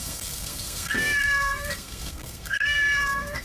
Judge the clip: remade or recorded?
remade